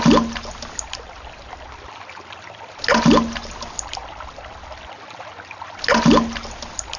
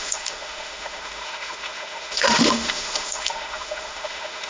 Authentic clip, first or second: first